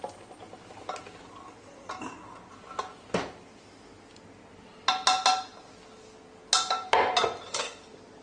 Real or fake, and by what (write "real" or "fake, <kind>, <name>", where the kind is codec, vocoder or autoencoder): real